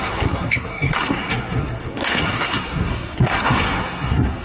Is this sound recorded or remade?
remade